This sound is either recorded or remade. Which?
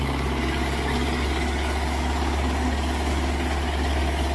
remade